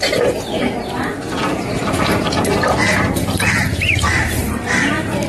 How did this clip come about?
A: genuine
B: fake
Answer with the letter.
B